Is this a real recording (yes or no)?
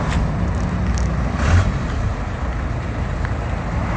yes